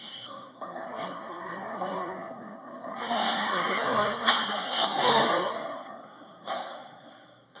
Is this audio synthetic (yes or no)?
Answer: yes